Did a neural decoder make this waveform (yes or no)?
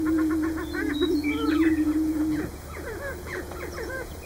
yes